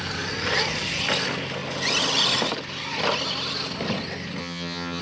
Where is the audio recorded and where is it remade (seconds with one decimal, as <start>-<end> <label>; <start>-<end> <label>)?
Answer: 0.0-4.4 recorded; 4.4-5.0 remade